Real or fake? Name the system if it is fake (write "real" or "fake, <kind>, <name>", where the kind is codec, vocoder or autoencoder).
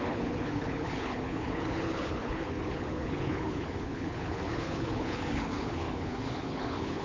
fake, codec, HILCodec